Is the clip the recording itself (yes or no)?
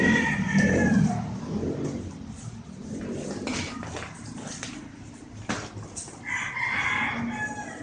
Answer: yes